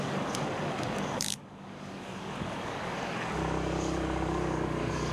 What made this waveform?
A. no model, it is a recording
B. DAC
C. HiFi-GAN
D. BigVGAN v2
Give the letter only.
B